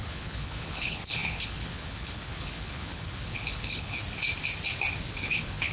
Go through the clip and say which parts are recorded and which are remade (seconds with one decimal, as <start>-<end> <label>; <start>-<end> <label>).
0.0-4.0 remade; 4.0-5.1 recorded; 5.1-5.7 remade